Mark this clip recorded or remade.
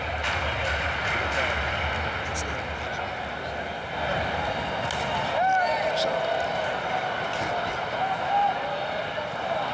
recorded